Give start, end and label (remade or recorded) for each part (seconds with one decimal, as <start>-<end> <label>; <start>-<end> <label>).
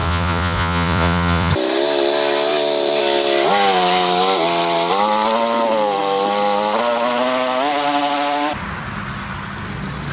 0.0-1.5 remade; 1.5-10.1 recorded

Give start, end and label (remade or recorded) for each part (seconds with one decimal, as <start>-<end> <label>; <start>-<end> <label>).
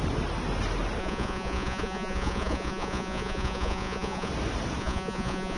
0.0-1.0 recorded; 1.0-4.3 remade; 4.3-4.8 recorded; 4.8-5.6 remade